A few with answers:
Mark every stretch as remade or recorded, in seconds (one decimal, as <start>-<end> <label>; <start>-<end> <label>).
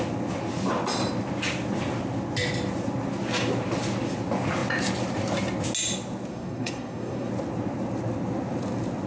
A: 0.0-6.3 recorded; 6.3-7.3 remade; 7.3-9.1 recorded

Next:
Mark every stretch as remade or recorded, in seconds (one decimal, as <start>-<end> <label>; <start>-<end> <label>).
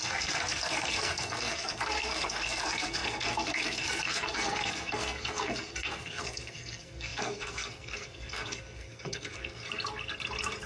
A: 0.0-9.6 remade; 9.6-10.7 recorded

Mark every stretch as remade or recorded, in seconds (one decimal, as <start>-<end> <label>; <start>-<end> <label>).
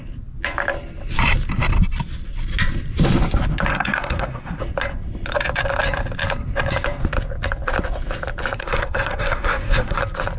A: 0.0-3.7 recorded; 3.7-4.6 remade; 4.6-8.6 recorded; 8.6-10.0 remade; 10.0-10.4 recorded